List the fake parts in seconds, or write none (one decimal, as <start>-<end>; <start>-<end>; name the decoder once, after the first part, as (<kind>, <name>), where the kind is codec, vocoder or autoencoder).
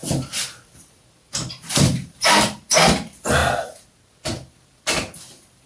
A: 0.0-2.7 (vocoder, BigVGAN v2); 3.4-4.1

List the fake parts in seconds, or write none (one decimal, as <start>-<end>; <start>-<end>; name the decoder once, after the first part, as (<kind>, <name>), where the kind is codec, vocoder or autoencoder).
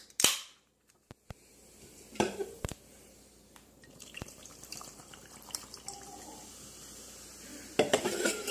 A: 1.5-5.5 (vocoder, BigVGAN v2)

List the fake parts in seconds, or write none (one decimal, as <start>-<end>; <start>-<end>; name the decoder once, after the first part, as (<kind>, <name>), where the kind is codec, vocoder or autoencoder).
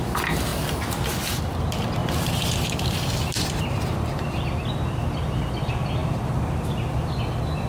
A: 2.0-4.4 (vocoder, BigVGAN v2); 6.0-6.6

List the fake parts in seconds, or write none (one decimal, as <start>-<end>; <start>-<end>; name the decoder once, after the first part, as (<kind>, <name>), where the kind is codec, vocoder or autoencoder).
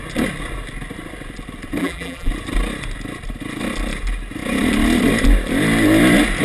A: 1.8-2.3 (vocoder, BigVGAN v2)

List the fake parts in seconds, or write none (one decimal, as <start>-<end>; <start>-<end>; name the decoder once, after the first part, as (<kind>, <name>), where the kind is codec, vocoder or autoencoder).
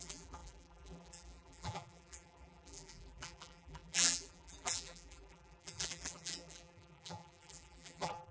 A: 0.0-8.3 (vocoder, BigVGAN v2)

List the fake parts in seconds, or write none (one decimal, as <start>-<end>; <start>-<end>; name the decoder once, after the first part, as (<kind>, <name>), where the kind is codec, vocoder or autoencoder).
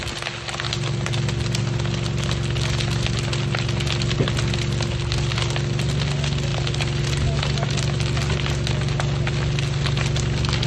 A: none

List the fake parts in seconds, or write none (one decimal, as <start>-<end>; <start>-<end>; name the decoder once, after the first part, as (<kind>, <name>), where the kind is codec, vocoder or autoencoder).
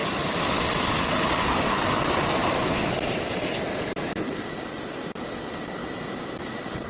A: 0.0-1.0 (vocoder, BigVGAN v2); 2.4-4.4; 5.8-6.5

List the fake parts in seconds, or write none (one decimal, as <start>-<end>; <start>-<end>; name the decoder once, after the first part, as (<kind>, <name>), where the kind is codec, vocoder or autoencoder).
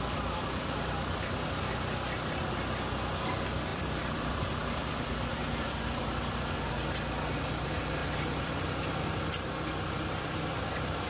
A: 3.7-6.7 (vocoder, BigVGAN v2); 8.0-8.8